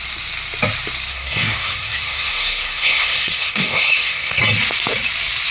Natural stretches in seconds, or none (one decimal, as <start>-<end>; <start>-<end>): 0.0-1.1; 4.4-5.5